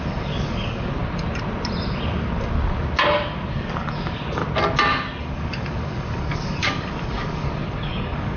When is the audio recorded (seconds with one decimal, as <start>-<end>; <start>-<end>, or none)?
1.0-3.5; 4.4-5.2